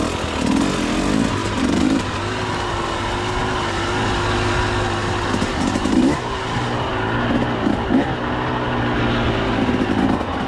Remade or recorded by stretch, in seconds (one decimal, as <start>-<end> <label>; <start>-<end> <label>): 0.0-1.4 recorded; 1.4-2.1 remade; 2.1-5.0 recorded; 5.0-6.9 remade; 6.9-10.5 recorded